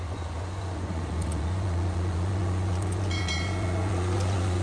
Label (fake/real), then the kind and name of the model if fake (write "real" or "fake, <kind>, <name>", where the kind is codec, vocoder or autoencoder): fake, vocoder, Vocos